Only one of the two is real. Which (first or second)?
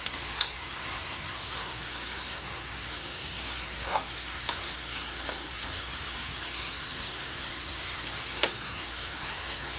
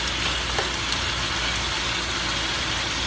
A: second